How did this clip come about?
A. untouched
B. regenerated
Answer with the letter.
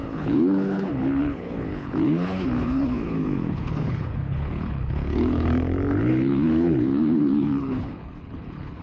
B